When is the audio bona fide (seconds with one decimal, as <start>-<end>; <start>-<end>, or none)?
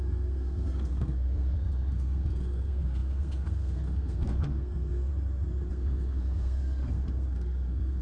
5.1-5.7